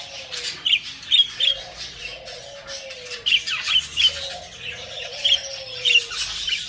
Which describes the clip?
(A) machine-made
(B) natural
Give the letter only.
B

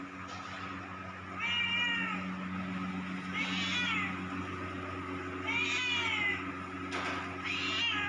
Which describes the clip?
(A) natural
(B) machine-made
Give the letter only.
A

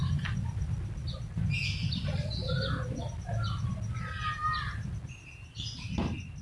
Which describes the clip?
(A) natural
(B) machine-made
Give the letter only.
A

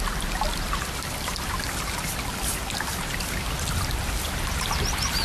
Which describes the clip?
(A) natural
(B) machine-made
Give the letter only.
B